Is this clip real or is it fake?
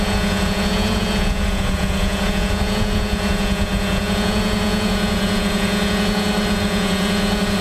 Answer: fake